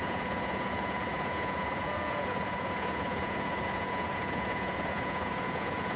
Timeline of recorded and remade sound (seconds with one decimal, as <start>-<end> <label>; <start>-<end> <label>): 0.0-6.0 remade